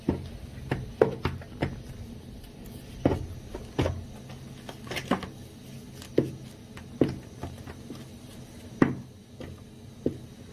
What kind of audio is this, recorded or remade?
recorded